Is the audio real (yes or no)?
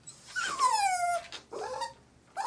yes